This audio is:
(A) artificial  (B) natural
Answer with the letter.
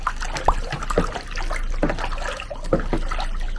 B